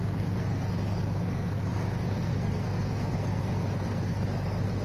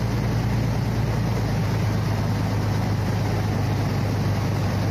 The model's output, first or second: first